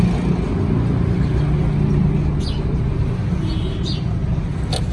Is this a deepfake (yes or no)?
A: no